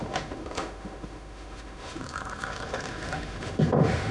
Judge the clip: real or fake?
fake